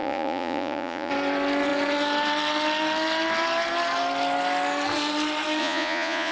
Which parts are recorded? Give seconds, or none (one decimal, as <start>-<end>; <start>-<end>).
1.1-5.6